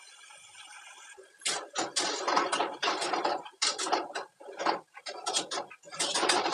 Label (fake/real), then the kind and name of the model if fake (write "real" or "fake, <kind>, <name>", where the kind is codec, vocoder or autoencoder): real